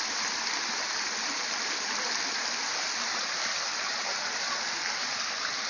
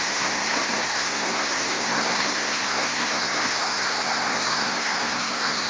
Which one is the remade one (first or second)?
second